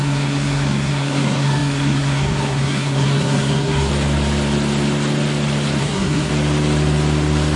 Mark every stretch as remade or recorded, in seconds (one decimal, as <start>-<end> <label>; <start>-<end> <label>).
0.0-3.9 remade; 3.9-5.8 recorded; 5.8-6.3 remade; 6.3-7.6 recorded